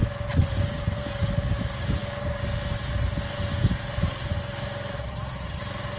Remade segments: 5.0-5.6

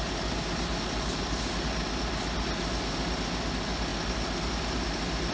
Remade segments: none

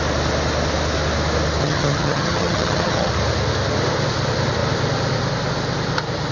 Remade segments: 1.6-3.1